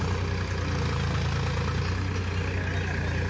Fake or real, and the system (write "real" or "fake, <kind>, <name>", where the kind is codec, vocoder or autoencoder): real